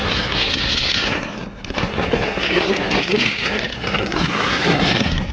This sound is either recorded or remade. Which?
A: remade